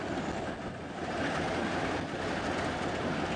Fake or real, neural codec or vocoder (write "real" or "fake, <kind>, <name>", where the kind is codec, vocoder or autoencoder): real